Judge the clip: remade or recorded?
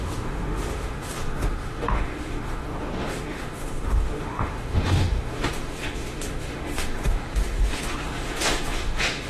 remade